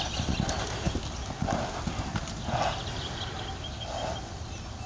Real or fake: real